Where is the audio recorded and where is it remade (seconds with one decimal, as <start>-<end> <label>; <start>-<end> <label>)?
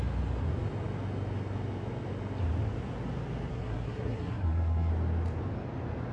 0.0-3.5 recorded; 3.5-4.9 remade; 4.9-6.1 recorded